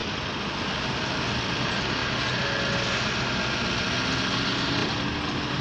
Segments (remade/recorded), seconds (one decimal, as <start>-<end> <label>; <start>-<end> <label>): 0.0-5.6 recorded